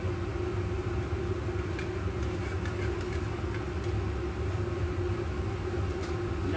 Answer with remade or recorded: recorded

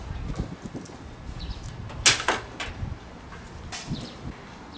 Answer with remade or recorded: recorded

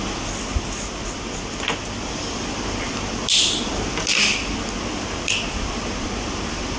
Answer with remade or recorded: recorded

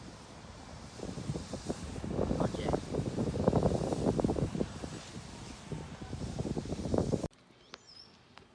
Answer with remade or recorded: recorded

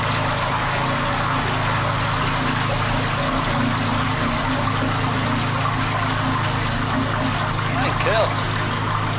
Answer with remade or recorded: recorded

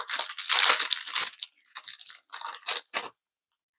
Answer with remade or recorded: recorded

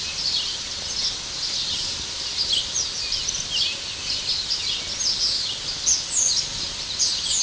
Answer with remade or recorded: recorded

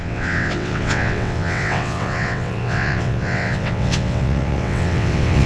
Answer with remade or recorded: remade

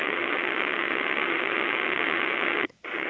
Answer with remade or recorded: remade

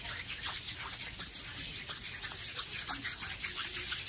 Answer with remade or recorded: recorded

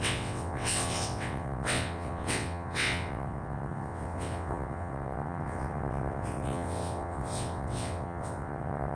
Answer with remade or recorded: remade